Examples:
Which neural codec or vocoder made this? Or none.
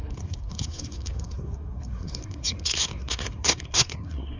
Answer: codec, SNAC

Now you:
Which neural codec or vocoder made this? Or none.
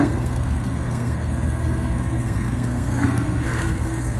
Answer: codec, SNAC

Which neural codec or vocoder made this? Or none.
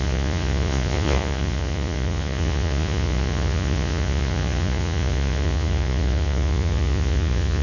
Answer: vocoder, Vocos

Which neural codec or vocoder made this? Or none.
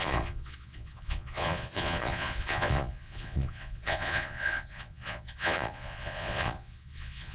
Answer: vocoder, Vocos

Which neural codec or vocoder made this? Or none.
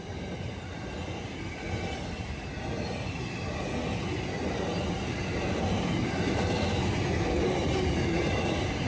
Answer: none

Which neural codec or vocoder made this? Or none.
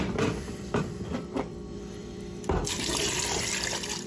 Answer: vocoder, BigVGAN v2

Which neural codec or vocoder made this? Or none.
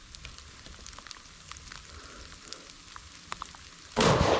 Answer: none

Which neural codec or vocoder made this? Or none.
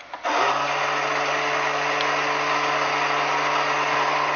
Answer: none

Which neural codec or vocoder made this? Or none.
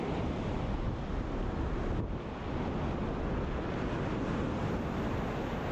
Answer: none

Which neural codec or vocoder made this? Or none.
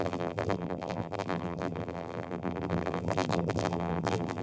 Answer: vocoder, BigVGAN v2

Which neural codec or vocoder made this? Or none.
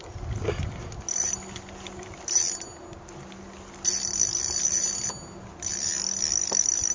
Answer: none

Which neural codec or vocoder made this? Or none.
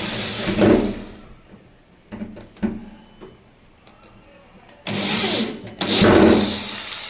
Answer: none